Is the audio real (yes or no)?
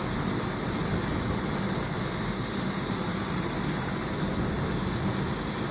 yes